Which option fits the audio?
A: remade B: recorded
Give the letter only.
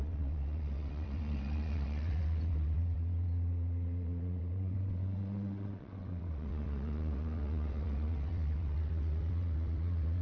A